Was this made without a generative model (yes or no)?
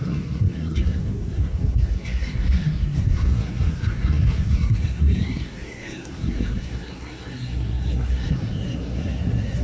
no